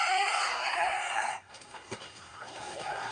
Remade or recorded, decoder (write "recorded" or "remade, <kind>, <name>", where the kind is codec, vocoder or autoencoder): remade, codec, SNAC